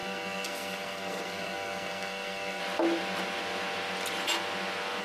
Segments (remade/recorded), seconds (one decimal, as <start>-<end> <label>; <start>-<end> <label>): 0.0-2.6 remade; 2.6-5.0 recorded